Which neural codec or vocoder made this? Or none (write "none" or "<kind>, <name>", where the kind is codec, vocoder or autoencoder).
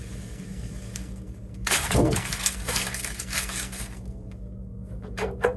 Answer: codec, SNAC